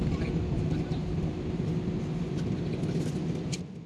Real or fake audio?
real